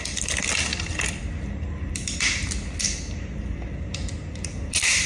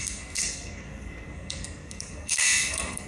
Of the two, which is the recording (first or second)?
first